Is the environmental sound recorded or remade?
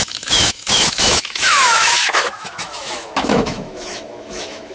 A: remade